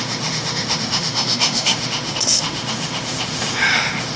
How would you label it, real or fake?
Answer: fake